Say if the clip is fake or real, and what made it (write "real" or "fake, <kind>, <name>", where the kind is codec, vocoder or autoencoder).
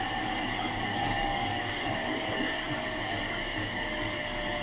fake, codec, DAC